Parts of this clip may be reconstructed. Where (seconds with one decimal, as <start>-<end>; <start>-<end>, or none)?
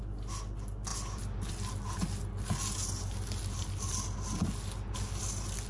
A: none